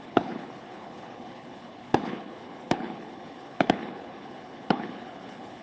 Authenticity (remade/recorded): remade